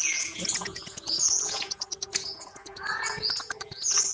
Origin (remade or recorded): remade